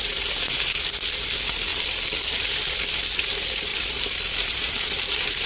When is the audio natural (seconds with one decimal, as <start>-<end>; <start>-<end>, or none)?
0.0-1.7; 2.9-3.7; 5.1-5.5